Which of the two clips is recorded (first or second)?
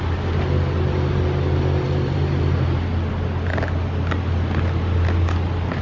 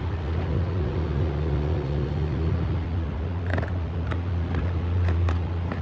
first